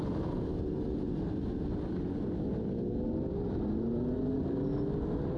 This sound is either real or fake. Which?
real